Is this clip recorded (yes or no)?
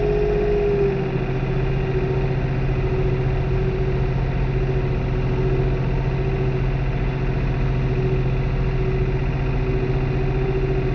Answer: yes